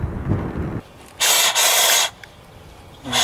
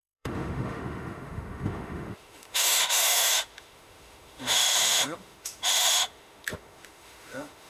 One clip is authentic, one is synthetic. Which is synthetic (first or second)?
second